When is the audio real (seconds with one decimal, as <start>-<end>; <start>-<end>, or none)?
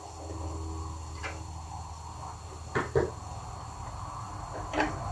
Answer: 0.0-5.1